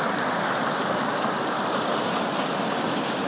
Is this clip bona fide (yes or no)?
yes